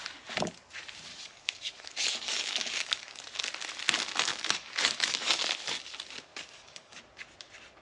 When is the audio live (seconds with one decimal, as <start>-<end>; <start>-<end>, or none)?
0.0-1.1; 3.2-4.3; 5.4-6.3; 7.0-7.8

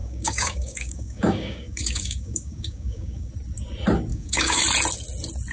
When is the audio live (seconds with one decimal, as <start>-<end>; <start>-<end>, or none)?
3.3-4.1; 4.6-5.5

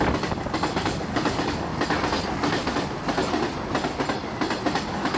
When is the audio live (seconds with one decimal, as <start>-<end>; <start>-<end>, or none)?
1.7-4.8

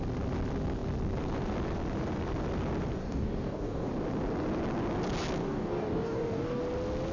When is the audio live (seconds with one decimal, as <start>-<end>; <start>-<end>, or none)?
0.0-3.0; 3.9-5.4; 6.6-7.1

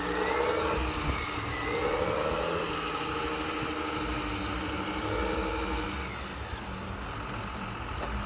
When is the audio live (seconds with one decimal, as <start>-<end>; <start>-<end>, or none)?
0.0-8.3

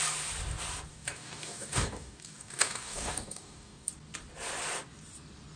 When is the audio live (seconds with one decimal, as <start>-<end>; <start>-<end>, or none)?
0.0-0.9; 3.9-5.6

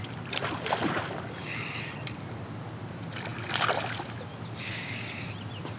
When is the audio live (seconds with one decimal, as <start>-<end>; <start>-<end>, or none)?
0.0-4.7; 5.3-5.8